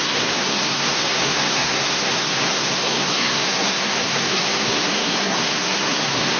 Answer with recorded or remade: remade